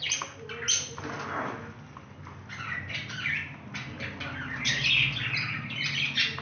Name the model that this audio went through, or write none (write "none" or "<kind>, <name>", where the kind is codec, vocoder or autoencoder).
none